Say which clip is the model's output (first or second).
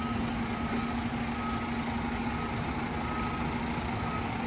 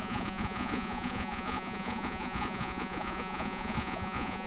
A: second